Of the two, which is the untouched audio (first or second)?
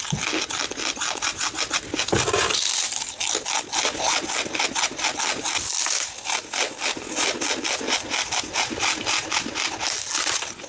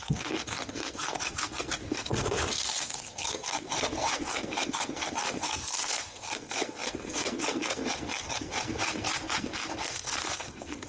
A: first